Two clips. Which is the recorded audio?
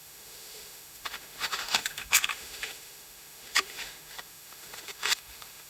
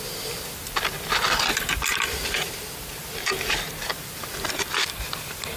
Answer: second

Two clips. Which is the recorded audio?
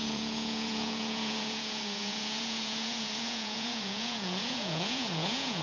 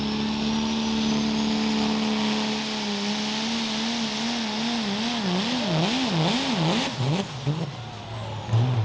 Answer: second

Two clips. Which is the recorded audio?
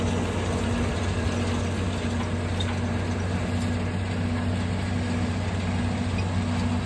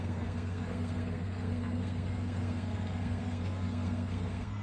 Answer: first